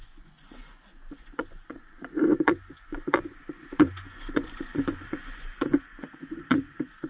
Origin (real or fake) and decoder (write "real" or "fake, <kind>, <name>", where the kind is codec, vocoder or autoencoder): fake, vocoder, Vocos